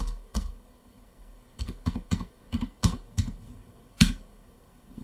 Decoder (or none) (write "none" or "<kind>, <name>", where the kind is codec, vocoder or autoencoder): codec, SNAC